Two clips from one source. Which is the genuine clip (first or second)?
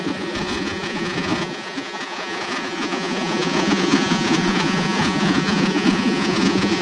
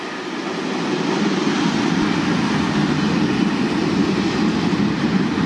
second